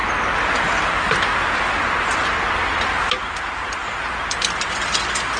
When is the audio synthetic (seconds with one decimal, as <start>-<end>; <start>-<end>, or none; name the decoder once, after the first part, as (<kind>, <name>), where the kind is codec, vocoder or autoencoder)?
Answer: 3.2-5.4 (vocoder, BigVGAN v2)